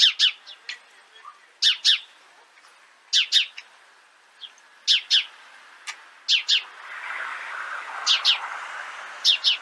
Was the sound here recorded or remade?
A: recorded